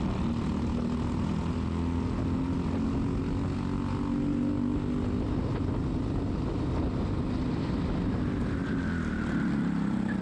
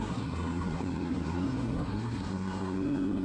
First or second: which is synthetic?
second